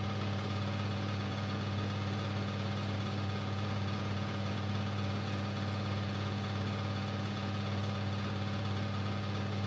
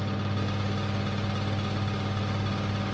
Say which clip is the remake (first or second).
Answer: first